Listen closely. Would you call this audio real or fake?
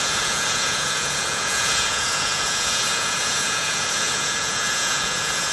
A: fake